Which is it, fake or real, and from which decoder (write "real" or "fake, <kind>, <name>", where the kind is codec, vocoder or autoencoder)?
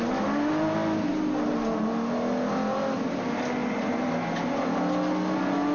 real